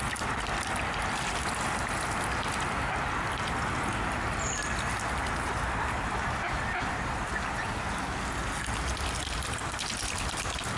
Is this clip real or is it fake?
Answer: real